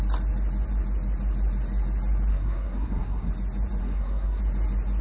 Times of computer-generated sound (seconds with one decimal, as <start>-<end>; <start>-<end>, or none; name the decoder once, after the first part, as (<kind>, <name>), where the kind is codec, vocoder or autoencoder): 2.3-3.3 (codec, SNAC); 3.8-4.4